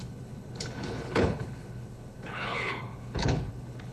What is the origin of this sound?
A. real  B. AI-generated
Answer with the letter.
B